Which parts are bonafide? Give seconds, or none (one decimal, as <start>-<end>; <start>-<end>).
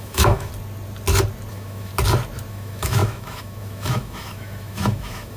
0.5-1.5; 1.9-2.5